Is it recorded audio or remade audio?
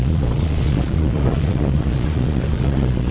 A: remade